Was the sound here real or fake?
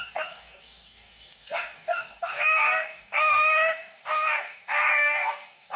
fake